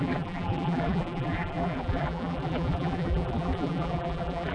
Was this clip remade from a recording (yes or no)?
yes